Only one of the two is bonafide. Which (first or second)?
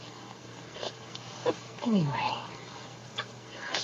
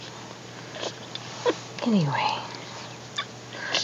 second